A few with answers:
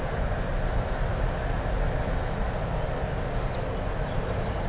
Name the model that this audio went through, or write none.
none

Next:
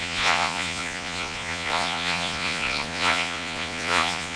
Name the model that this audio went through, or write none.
vocoder, Vocos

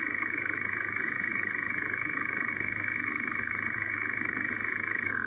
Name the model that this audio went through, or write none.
codec, SNAC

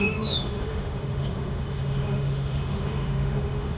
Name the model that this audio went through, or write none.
autoencoder, DAC-VAE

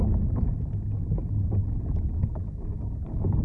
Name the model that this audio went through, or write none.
none